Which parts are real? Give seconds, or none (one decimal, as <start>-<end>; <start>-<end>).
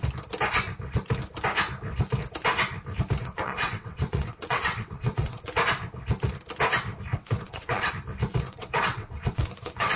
0.0-3.2; 5.5-7.1; 7.9-8.3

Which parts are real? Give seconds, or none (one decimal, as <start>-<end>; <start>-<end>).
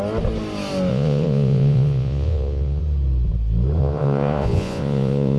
0.0-0.9; 2.8-3.8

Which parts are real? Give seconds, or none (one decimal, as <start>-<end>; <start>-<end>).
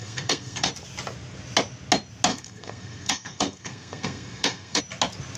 0.7-2.3; 4.8-5.4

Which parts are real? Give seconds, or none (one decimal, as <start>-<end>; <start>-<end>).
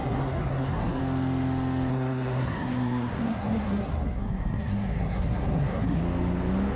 1.0-1.9; 6.0-6.8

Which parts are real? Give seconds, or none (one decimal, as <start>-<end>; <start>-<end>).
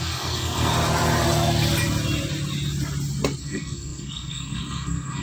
0.7-3.4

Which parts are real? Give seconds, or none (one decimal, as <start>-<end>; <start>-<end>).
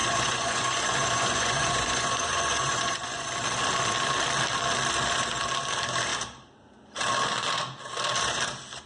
3.3-8.9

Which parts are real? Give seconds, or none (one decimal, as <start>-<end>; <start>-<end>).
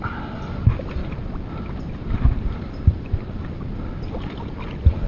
0.0-5.1